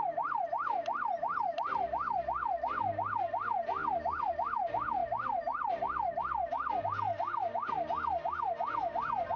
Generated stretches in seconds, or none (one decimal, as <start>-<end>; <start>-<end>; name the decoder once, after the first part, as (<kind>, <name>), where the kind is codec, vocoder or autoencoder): 3.8-4.3 (vocoder, BigVGAN v2)